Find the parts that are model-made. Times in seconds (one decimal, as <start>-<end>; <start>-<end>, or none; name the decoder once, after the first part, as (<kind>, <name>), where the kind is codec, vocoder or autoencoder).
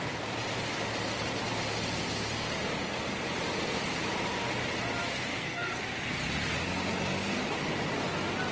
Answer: 5.3-5.8 (codec, SNAC)